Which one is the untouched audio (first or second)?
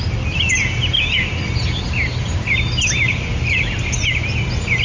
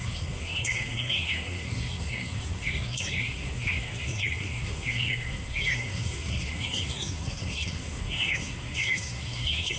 first